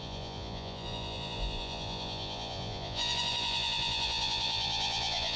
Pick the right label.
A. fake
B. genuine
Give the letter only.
A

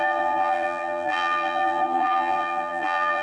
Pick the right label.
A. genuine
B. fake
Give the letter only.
B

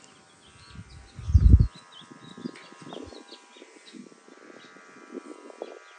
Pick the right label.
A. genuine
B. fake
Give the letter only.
A